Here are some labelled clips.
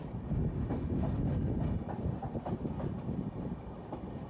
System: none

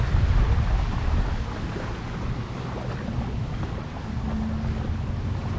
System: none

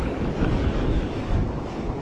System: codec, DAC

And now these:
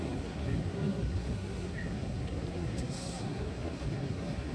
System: codec, SNAC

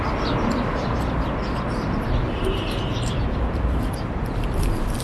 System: vocoder, BigVGAN v2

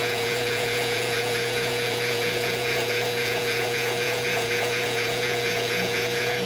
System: vocoder, Vocos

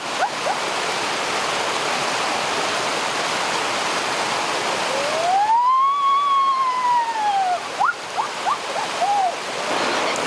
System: none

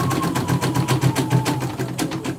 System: none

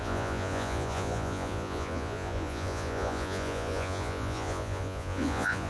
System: vocoder, Vocos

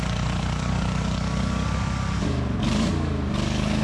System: codec, DAC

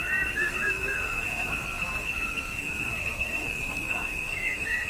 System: codec, SNAC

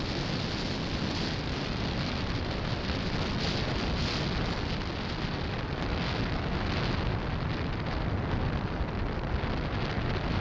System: none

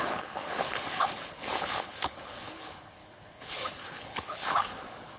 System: codec, HILCodec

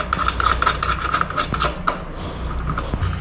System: none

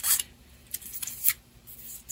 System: none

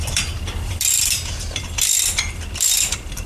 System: vocoder, BigVGAN v2